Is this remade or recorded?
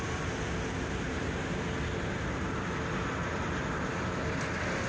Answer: recorded